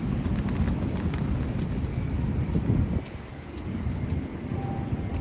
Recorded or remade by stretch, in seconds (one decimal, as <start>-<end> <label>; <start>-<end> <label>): 0.0-3.3 recorded; 3.3-4.1 remade; 4.1-5.2 recorded